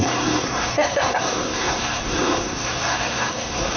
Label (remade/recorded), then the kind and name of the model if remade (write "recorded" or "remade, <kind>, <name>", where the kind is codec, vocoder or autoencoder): remade, codec, SNAC